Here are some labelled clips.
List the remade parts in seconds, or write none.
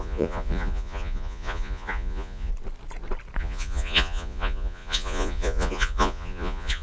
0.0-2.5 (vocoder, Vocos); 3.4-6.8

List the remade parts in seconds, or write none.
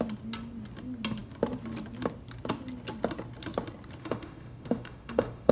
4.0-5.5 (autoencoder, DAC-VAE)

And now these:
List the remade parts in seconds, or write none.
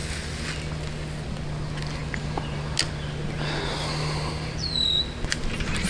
none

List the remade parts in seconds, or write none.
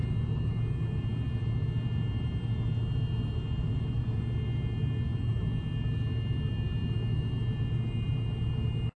3.6-4.2 (vocoder, Vocos)